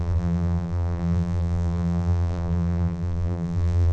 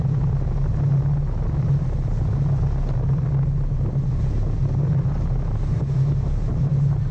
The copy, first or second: first